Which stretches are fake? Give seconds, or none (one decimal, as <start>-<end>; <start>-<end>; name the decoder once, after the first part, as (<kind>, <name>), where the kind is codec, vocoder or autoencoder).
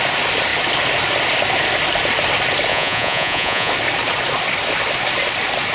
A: 2.7-3.7 (vocoder, Vocos)